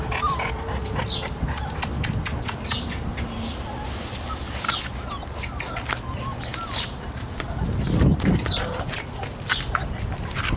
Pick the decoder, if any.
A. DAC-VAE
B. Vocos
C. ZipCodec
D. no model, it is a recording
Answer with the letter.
D